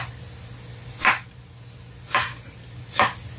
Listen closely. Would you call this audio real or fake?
real